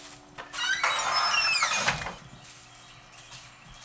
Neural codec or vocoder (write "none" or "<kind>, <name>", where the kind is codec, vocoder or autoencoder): none